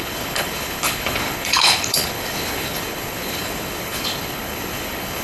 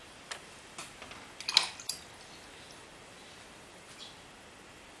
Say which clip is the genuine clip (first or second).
second